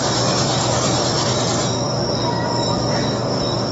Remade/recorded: recorded